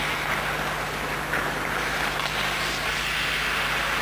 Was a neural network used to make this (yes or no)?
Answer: no